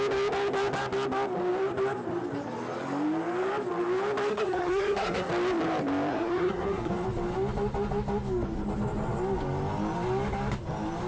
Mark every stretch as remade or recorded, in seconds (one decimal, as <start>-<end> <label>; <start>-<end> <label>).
0.0-4.3 recorded; 4.3-5.3 remade; 5.3-6.1 recorded; 6.1-6.9 remade; 6.9-11.1 recorded